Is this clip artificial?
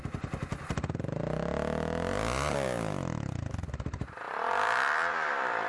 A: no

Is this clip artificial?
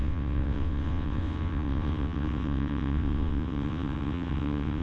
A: yes